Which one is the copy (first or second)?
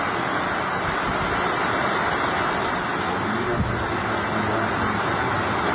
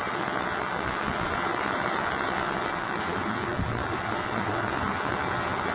second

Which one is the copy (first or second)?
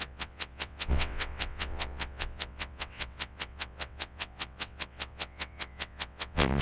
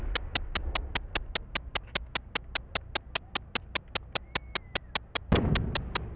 first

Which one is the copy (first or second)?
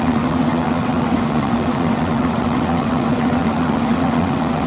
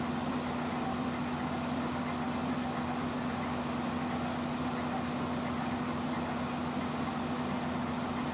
first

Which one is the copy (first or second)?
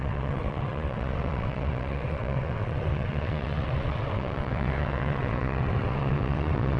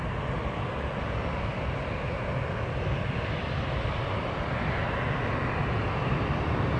first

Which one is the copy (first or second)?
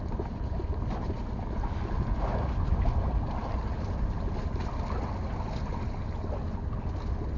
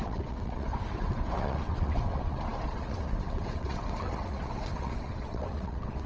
second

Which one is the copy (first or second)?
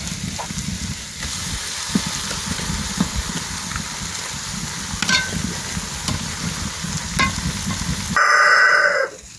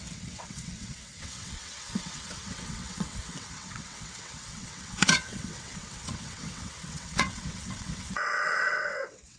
second